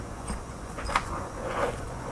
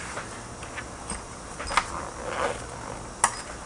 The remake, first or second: first